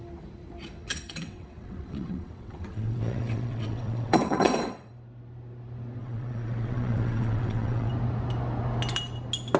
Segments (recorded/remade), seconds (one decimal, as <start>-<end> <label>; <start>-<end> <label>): 0.0-0.9 recorded; 0.9-4.9 remade; 4.9-6.0 recorded; 6.0-7.9 remade; 7.9-9.6 recorded